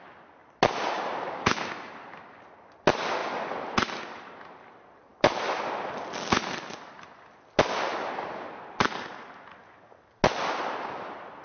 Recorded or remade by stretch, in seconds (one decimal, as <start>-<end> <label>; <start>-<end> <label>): 0.0-11.4 recorded